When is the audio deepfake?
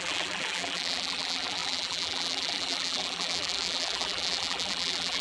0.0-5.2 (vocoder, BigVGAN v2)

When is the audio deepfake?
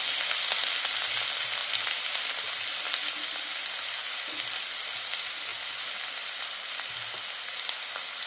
1.6-2.3 (vocoder, BigVGAN v2); 5.5-6.9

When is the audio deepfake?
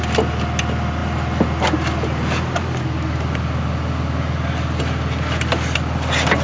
none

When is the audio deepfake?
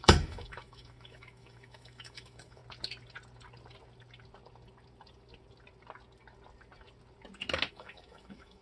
0.0-2.6 (autoencoder, DAC-VAE); 7.7-8.6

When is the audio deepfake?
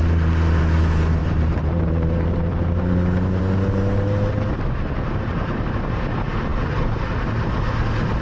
1.2-3.4 (vocoder, BigVGAN v2)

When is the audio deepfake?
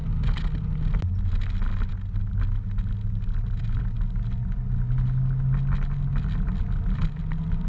none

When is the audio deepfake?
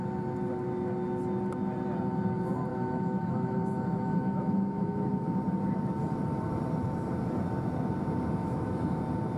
2.7-5.1 (autoencoder, DAC-VAE); 8.4-9.0